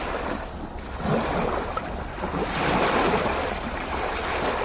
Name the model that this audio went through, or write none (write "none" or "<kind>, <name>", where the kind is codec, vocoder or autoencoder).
none